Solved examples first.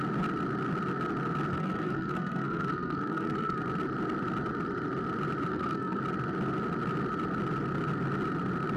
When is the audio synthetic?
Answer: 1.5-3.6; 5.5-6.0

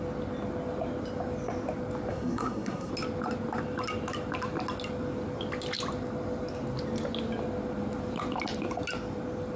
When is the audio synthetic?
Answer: 2.1-2.9